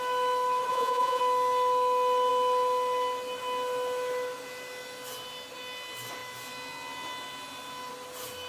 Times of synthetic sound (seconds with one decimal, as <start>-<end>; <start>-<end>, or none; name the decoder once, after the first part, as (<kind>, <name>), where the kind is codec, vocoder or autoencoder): 0.7-1.2 (vocoder, Vocos)